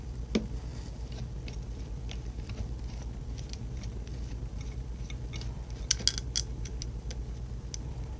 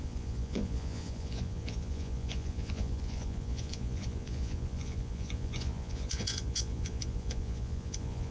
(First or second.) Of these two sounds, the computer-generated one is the second